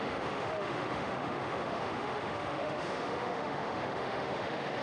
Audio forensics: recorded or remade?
remade